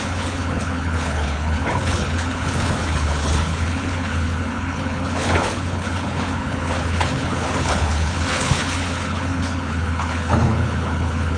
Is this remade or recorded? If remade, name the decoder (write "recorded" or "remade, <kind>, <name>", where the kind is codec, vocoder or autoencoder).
remade, codec, HILCodec